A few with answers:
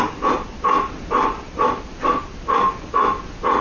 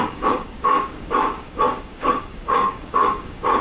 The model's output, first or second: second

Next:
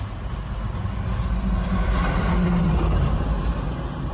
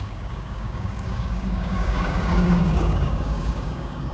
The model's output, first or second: second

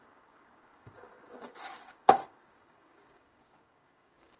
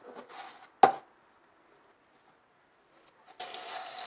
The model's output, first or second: first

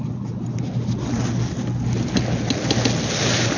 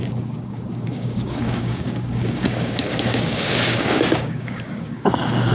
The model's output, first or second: second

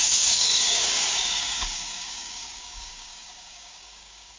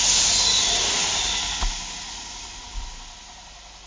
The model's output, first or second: first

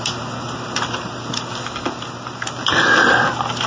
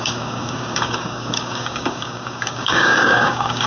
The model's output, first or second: second